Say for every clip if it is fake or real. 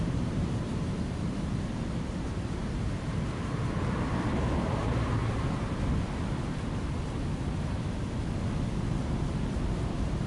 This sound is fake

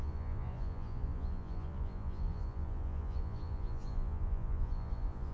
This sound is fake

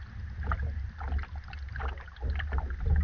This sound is real